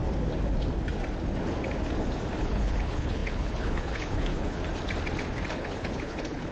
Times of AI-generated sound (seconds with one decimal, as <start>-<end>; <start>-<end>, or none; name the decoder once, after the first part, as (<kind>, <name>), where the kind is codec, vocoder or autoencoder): 2.4-4.6 (codec, HILCodec); 5.5-6.5